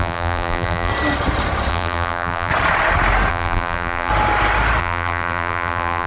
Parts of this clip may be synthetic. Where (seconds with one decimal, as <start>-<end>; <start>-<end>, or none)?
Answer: 0.0-0.9; 1.7-2.5; 3.3-4.1; 4.8-6.1